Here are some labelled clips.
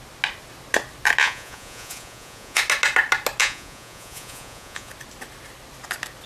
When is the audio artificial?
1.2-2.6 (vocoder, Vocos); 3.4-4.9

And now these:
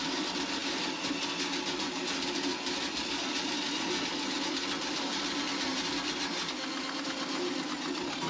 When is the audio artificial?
5.7-6.2 (vocoder, BigVGAN v2)

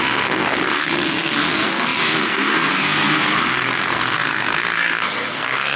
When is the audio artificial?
0.0-5.8 (codec, SNAC)

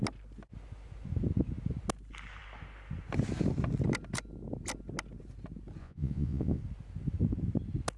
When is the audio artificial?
5.8-6.6 (vocoder, Vocos)

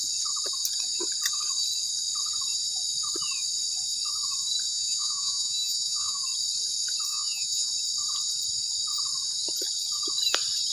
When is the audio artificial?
4.7-6.2 (vocoder, Vocos); 7.1-7.7

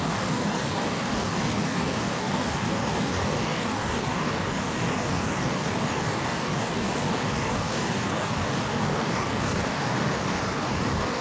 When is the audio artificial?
0.0-11.2 (codec, DAC)

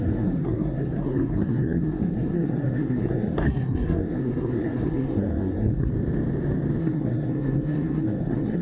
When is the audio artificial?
0.0-5.9 (codec, SNAC); 6.8-8.6